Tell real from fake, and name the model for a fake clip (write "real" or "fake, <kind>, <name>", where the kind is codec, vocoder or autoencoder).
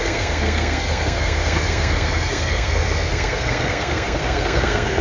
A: fake, codec, SNAC